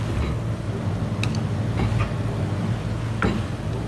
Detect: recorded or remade recorded